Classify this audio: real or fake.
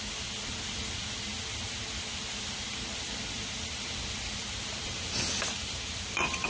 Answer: real